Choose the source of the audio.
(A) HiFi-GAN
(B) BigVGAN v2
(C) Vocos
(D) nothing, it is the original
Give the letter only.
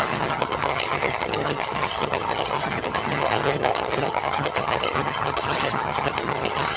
A